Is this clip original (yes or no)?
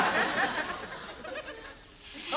yes